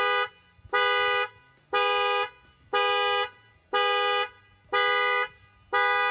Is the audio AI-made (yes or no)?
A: no